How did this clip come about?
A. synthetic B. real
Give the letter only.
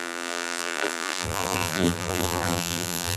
A